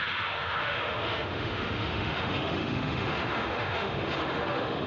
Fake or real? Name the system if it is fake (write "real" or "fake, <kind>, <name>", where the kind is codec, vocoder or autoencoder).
fake, autoencoder, DAC-VAE